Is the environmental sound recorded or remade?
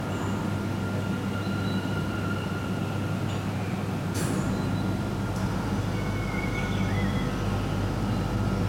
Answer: recorded